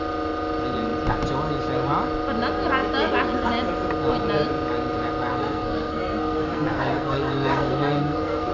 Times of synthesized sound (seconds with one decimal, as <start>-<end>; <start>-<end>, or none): 5.3-8.5